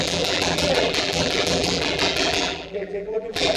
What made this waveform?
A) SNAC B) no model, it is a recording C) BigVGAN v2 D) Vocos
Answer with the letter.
C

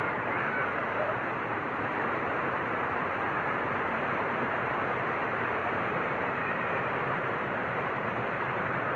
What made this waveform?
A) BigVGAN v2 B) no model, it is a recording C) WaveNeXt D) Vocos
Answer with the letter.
A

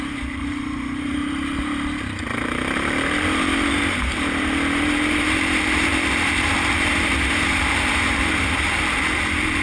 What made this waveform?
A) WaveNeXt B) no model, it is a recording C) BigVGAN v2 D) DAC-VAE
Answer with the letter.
C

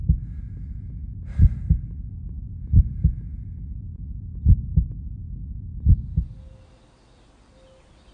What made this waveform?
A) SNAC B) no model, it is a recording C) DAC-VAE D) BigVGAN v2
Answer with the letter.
B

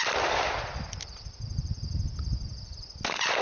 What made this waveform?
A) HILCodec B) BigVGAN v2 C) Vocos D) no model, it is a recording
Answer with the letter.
B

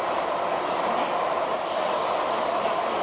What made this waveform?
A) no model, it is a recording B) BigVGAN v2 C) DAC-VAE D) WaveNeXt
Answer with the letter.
B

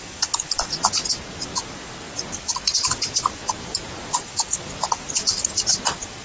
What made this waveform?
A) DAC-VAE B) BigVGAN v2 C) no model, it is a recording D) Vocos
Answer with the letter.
B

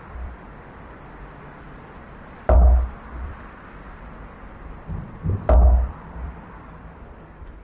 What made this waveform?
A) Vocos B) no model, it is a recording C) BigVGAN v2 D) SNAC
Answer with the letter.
C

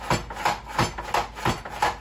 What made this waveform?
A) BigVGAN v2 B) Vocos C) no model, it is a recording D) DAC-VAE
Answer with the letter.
C